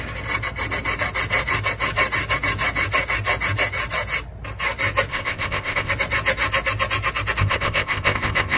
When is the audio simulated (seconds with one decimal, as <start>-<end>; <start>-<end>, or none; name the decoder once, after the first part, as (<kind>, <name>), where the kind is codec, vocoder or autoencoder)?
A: 5.1-5.9 (codec, ZipCodec); 7.4-8.6